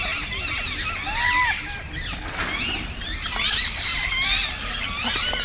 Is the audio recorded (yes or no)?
yes